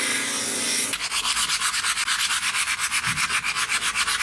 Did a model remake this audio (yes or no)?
no